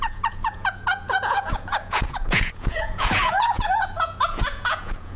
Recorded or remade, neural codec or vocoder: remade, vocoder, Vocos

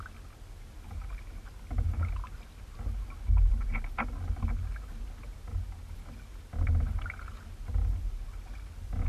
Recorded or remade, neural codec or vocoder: recorded